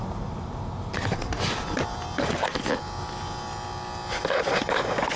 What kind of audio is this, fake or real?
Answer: real